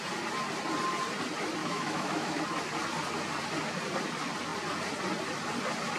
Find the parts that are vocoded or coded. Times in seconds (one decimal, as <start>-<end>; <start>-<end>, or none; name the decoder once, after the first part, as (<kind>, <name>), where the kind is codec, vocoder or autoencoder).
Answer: 1.6-2.4 (autoencoder, DAC-VAE)